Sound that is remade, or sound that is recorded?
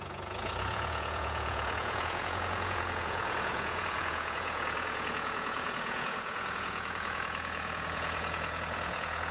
remade